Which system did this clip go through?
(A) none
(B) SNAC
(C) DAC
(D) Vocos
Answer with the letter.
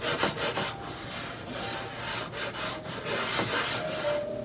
A